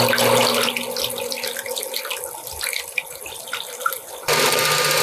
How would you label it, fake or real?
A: real